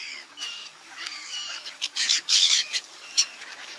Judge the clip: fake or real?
fake